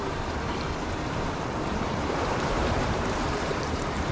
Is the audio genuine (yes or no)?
no